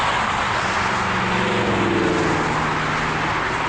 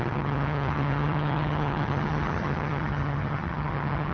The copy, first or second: second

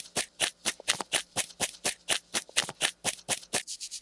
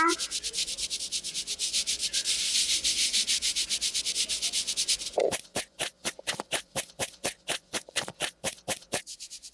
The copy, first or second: second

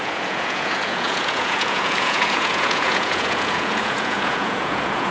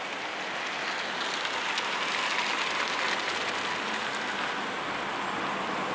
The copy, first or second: first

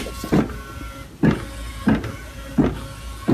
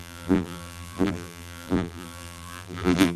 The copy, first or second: second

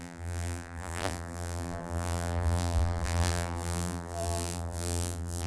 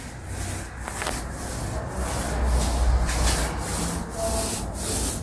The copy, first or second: first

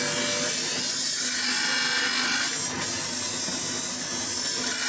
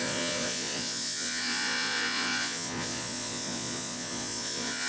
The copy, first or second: second